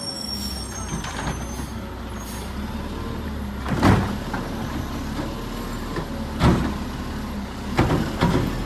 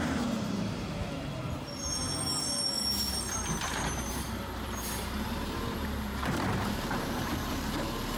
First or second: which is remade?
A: second